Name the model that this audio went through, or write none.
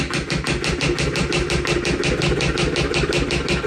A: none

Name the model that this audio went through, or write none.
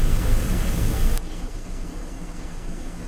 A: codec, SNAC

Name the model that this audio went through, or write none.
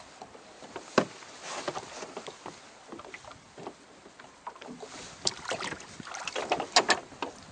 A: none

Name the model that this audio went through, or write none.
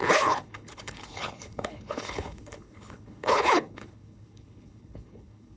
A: codec, HILCodec